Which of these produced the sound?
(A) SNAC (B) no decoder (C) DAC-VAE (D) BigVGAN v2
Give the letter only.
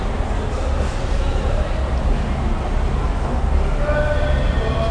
B